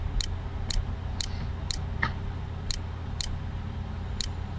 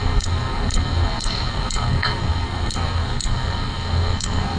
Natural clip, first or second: first